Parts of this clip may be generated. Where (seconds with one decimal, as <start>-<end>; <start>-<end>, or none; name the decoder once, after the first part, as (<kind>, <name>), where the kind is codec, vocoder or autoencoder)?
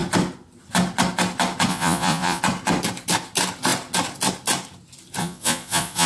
1.7-2.4 (vocoder, Vocos); 5.2-6.1